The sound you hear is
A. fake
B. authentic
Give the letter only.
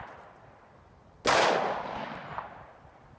B